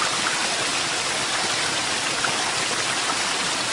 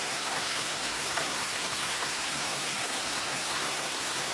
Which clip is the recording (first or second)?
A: first